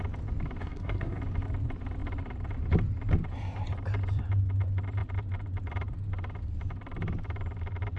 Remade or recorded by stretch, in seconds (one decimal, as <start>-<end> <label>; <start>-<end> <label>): 0.0-0.6 recorded; 0.6-1.2 remade; 1.2-8.0 recorded